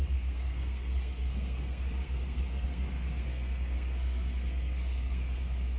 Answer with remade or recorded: remade